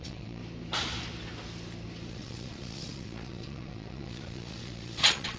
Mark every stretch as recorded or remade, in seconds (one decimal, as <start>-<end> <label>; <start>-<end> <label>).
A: 0.0-0.4 remade; 0.4-2.1 recorded; 2.1-5.4 remade